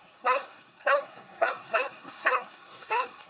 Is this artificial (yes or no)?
yes